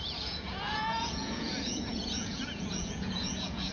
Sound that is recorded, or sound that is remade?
remade